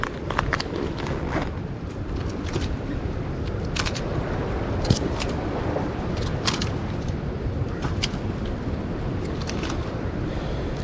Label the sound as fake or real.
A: real